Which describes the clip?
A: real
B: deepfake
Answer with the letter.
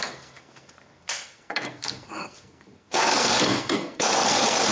B